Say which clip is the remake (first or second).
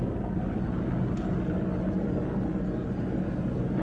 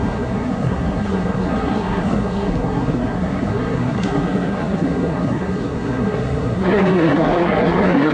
second